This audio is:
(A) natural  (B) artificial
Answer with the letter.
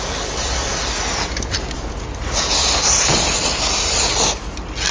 A